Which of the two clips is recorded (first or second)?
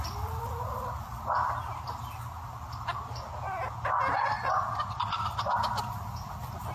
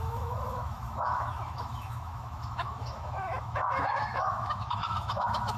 first